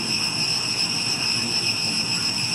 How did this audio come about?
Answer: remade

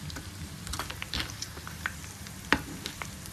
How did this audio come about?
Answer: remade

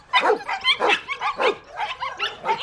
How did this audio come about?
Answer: remade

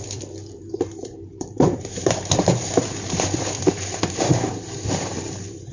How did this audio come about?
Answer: remade